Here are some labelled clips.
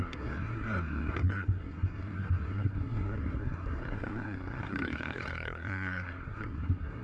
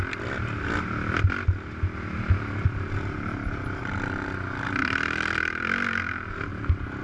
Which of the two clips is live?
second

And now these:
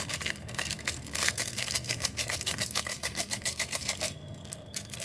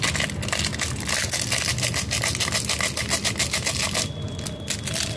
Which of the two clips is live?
second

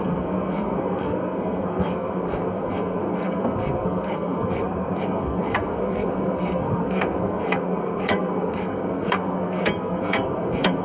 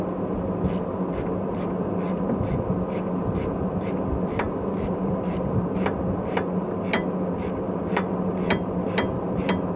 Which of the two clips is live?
second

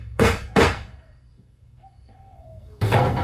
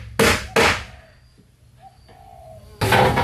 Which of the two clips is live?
second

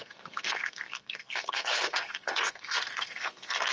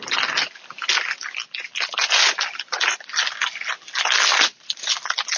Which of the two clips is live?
second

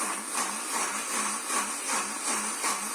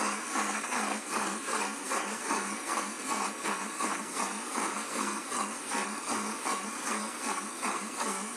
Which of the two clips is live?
first